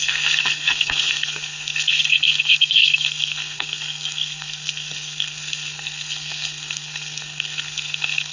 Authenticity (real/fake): fake